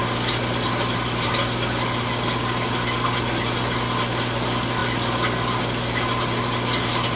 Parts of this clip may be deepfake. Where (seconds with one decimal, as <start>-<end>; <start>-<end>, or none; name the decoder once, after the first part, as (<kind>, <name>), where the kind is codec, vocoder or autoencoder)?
none